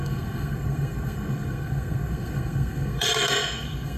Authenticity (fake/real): fake